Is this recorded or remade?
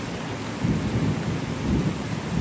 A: recorded